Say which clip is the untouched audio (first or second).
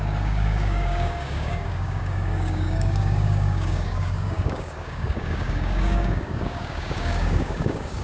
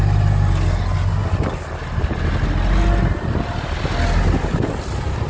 second